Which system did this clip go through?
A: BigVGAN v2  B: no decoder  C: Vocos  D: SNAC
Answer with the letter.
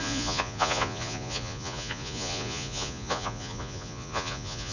C